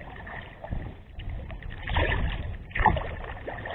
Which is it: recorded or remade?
remade